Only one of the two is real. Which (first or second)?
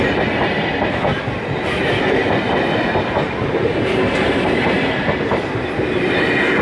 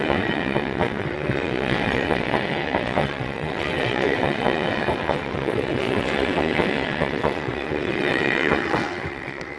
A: first